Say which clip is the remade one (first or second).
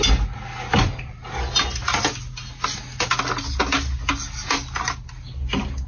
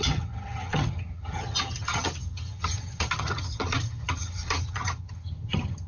second